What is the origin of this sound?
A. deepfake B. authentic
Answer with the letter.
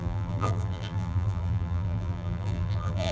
A